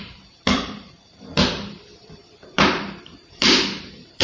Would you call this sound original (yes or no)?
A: no